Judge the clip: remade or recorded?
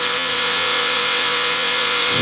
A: remade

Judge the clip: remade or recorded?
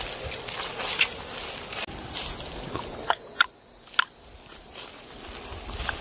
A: recorded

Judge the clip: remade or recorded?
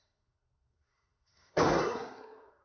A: remade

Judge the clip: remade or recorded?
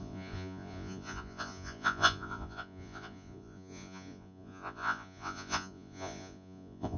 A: remade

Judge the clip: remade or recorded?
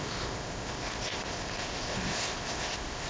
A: remade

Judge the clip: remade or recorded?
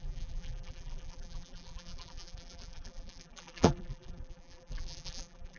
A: remade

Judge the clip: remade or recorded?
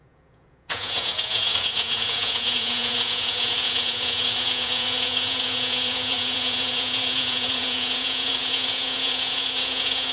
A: remade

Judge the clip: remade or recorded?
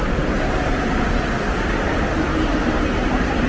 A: recorded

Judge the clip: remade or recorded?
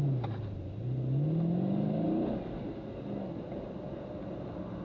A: recorded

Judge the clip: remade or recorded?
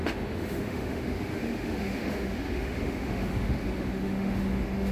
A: remade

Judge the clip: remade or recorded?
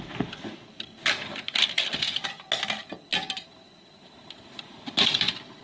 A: recorded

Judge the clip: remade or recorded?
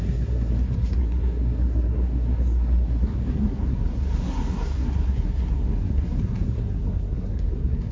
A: remade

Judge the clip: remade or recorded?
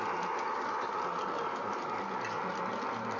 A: recorded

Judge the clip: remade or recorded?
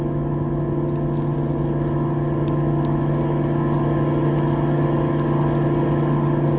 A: recorded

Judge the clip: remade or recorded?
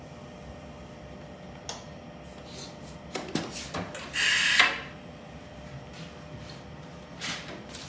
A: recorded